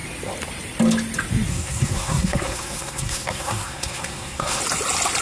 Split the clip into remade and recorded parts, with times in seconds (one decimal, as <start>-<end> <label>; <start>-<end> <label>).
0.0-1.5 recorded; 1.5-4.6 remade; 4.6-5.2 recorded